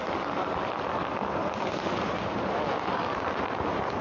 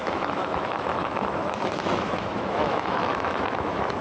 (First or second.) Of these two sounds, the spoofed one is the second